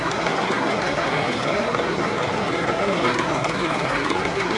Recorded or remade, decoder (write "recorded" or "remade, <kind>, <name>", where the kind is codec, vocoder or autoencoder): remade, codec, SNAC